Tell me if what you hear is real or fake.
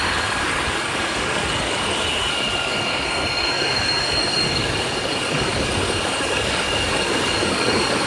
fake